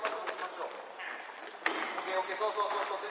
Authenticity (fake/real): real